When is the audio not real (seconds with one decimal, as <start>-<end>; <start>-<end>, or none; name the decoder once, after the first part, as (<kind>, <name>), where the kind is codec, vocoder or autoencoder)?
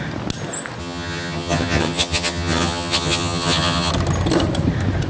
0.8-3.9 (vocoder, HiFi-GAN)